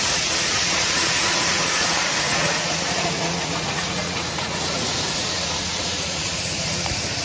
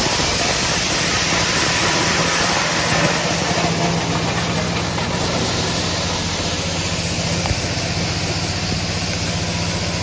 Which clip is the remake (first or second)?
first